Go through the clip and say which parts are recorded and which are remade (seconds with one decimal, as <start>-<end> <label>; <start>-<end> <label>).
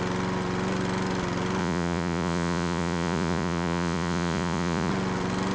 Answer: 0.0-1.6 recorded; 1.6-4.9 remade; 4.9-5.5 recorded